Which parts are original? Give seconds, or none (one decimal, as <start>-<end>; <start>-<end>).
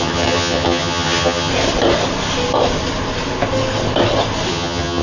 1.5-4.5